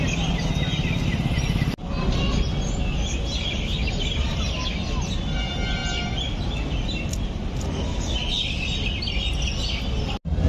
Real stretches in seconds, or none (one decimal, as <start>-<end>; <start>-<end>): 0.0-3.8; 4.6-10.5